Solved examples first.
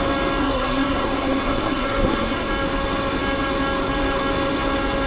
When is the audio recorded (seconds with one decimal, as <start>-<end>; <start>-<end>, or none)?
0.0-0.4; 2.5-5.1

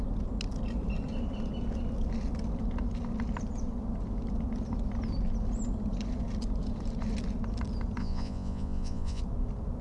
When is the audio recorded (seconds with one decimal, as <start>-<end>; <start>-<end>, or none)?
0.0-8.0; 9.2-9.8

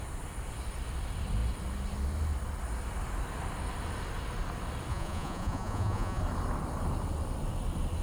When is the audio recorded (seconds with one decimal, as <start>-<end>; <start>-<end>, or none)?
0.0-4.9; 6.2-8.0

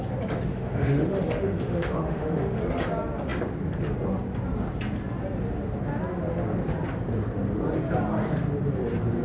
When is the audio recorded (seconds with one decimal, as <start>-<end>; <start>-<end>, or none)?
0.0-0.5; 2.6-9.2